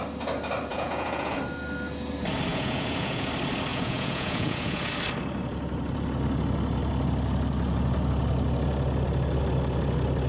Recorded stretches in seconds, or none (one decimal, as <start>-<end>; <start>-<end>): 0.0-0.7; 1.4-2.5; 3.3-3.7; 4.9-10.3